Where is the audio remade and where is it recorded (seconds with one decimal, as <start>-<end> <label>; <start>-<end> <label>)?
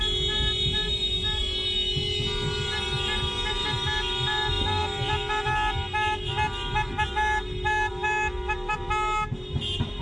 0.0-10.0 recorded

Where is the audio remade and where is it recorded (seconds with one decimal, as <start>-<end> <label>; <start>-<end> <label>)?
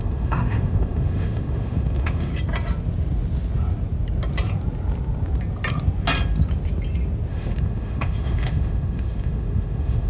0.0-2.3 remade; 2.3-7.3 recorded; 7.3-10.1 remade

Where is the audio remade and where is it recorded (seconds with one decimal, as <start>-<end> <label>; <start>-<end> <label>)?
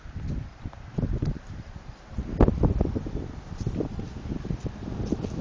0.0-0.5 recorded; 0.5-1.9 remade; 1.9-5.4 recorded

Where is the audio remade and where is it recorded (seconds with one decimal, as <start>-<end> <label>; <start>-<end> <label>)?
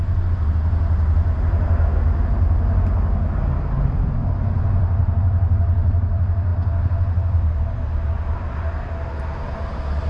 0.0-10.1 recorded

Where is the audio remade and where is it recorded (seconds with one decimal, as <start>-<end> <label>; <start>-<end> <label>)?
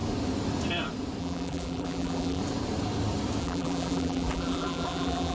0.0-1.2 recorded; 1.2-2.4 remade; 2.4-3.4 recorded; 3.4-5.3 remade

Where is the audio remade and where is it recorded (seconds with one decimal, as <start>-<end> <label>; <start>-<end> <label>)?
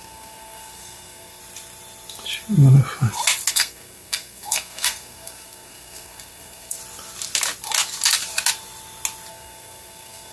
0.0-1.4 remade; 1.4-3.5 recorded; 3.5-6.8 remade; 6.8-9.3 recorded; 9.3-10.3 remade